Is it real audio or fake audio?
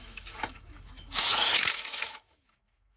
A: fake